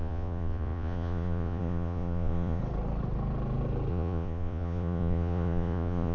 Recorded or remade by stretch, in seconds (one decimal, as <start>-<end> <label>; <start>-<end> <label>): 0.0-2.6 remade; 2.6-3.9 recorded; 3.9-6.1 remade